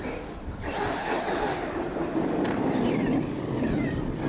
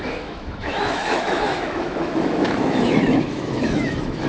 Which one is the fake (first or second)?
second